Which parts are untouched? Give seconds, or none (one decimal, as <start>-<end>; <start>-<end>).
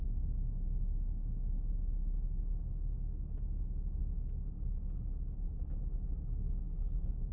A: 0.0-7.3